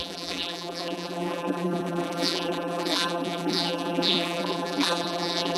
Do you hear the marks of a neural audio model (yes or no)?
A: yes